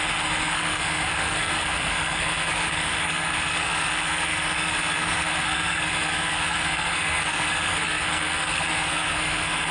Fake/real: fake